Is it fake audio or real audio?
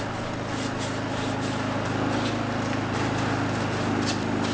real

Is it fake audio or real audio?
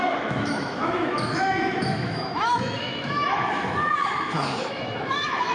fake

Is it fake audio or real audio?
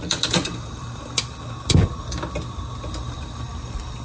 real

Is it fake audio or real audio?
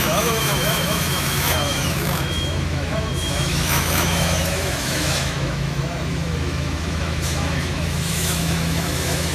fake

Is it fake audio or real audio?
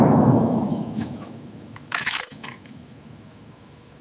fake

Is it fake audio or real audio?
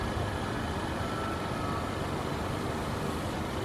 real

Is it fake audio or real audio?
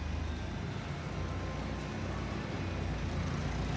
real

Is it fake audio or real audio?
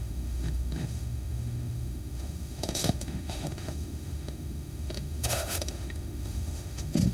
fake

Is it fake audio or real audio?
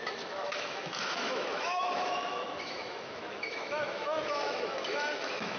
fake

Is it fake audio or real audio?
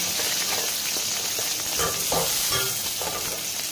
real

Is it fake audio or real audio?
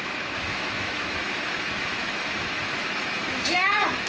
fake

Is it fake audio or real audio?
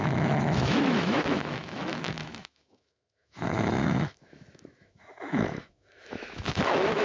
fake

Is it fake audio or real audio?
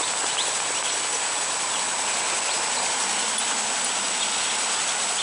real